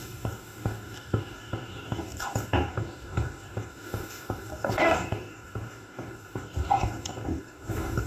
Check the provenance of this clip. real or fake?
fake